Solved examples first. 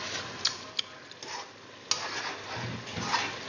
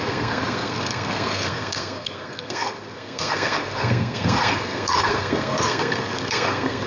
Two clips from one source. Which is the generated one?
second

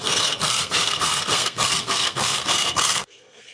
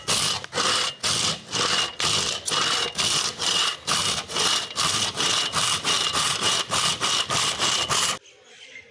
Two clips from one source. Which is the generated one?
first